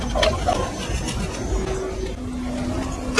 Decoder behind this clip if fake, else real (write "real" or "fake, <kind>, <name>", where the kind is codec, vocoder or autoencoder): real